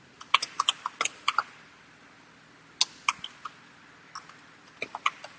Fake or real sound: real